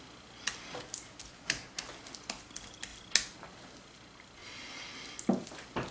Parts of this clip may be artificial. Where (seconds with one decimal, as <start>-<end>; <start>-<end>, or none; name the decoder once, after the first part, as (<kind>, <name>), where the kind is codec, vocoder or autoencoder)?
4.4-4.9 (vocoder, Vocos)